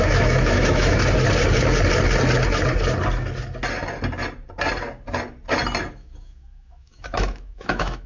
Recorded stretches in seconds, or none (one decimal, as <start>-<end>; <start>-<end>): 1.0-5.9